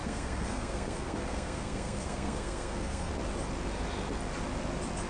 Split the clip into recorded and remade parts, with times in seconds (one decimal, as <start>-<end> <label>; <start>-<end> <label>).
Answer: 0.0-3.1 remade; 3.1-5.1 recorded